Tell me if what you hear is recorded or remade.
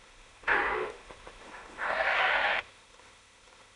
remade